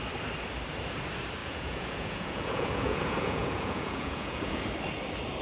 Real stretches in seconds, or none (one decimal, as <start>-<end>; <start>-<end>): 0.0-1.4; 4.6-5.4